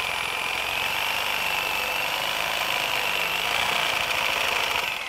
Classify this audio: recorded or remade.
recorded